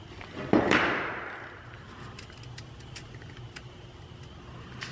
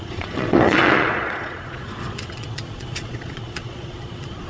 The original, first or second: first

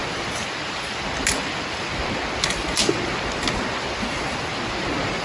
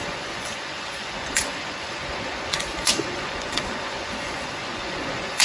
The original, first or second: first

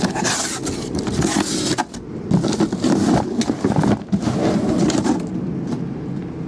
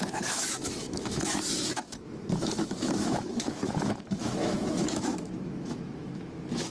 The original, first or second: first